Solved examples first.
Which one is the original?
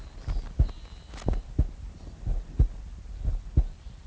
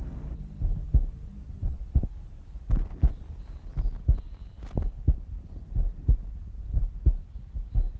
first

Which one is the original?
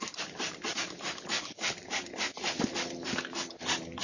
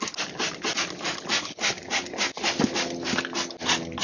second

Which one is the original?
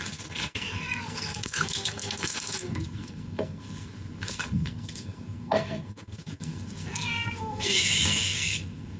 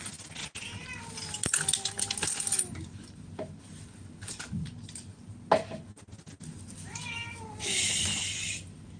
second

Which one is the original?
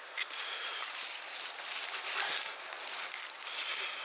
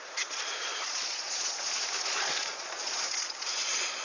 first